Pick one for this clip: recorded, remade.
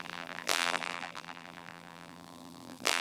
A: remade